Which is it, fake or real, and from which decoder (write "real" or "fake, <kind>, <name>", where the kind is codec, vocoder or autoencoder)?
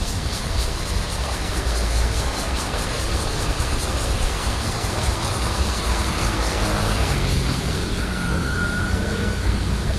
fake, codec, SNAC